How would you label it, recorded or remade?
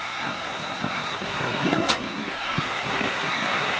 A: remade